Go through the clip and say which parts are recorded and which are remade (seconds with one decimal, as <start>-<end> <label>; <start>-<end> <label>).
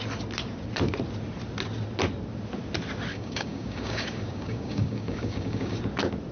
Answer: 0.0-3.1 recorded; 3.1-5.8 remade; 5.8-6.3 recorded